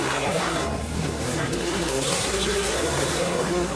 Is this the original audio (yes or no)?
no